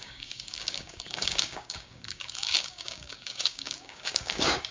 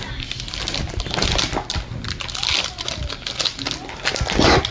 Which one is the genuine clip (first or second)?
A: second